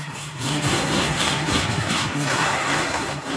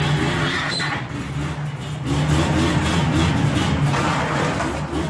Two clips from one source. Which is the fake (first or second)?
first